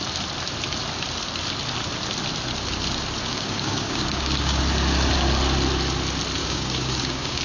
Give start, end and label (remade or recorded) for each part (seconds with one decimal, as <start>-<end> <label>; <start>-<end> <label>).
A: 0.0-3.3 recorded; 3.3-4.6 remade; 4.6-6.4 recorded; 6.4-7.4 remade